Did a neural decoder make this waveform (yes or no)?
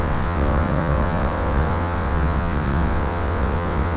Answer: yes